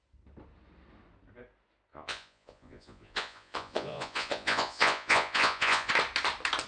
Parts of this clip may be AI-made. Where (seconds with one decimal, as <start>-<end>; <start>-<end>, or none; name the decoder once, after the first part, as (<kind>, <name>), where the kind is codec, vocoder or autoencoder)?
1.9-5.9 (vocoder, Vocos)